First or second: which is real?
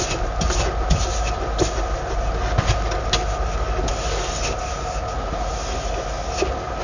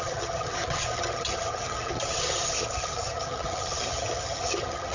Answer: first